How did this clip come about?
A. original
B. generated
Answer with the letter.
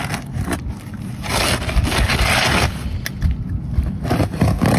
A